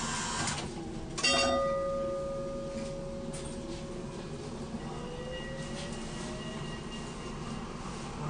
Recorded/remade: recorded